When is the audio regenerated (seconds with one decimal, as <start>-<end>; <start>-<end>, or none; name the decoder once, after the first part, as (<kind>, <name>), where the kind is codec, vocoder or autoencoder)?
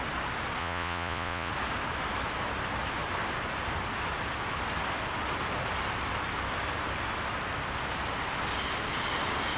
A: 0.6-1.5 (vocoder, Vocos)